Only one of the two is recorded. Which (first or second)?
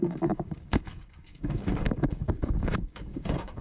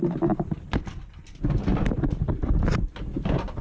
second